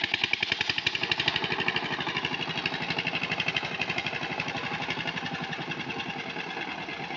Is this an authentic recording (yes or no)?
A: yes